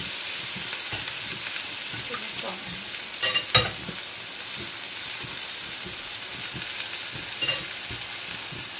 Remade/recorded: recorded